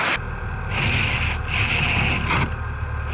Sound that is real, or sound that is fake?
real